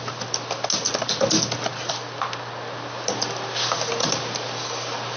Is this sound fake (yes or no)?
no